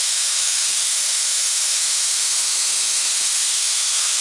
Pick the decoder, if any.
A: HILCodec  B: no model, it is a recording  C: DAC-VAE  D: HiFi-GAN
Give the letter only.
C